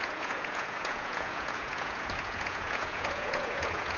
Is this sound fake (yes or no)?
yes